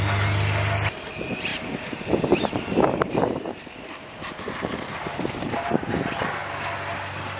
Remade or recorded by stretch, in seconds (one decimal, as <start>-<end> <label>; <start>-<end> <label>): 0.0-1.5 recorded; 1.5-5.9 remade; 5.9-7.4 recorded